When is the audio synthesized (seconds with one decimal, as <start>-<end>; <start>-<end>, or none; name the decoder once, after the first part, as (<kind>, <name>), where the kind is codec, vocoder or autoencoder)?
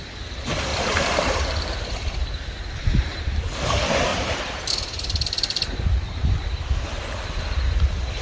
0.7-3.4 (vocoder, BigVGAN v2); 4.1-6.2